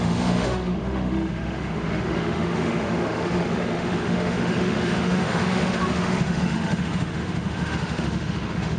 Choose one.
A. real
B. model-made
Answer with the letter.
B